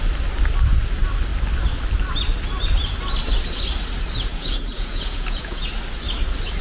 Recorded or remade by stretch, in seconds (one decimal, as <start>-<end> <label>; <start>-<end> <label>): 0.0-4.3 recorded; 4.3-5.7 remade; 5.7-6.6 recorded